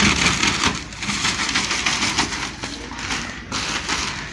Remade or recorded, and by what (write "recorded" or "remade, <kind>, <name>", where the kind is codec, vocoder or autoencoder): recorded